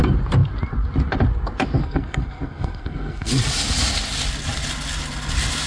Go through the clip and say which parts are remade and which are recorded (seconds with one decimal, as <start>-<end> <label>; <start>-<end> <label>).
0.0-1.8 recorded; 1.8-3.3 remade; 3.3-5.7 recorded